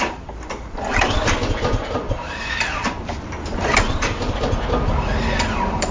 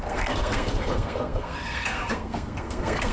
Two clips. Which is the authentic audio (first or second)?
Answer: first